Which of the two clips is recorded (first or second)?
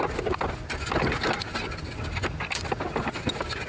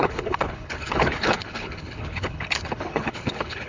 first